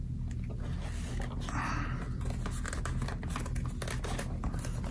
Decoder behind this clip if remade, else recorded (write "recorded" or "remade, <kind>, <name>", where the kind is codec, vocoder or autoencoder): recorded